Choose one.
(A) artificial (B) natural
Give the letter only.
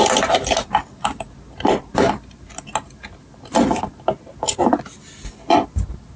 B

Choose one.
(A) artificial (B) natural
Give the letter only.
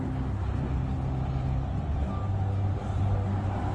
B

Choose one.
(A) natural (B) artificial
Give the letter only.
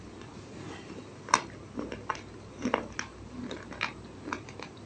A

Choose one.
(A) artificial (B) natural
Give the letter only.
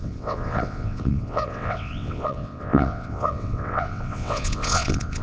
A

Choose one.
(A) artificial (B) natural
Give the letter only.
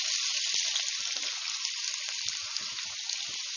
B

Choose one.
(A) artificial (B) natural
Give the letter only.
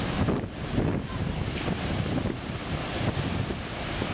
B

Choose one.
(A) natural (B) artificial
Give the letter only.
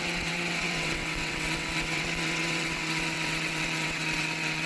B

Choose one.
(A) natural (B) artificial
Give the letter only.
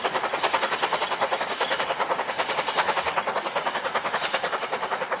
A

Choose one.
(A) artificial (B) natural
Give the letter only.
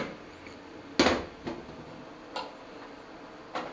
B